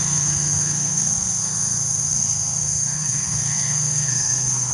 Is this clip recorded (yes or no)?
no